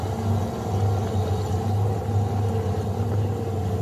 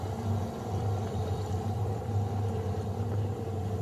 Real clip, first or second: first